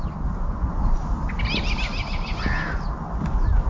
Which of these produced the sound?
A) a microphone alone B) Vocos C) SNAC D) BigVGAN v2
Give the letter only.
A